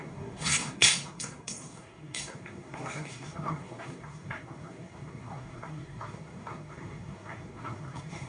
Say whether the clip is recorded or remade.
remade